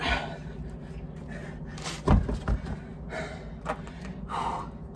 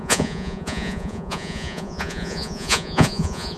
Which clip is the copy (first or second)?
second